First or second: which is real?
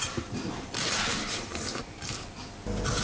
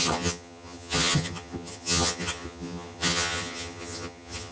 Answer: first